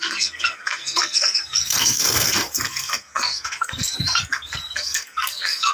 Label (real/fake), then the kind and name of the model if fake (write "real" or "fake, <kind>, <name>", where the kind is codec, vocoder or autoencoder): fake, codec, SNAC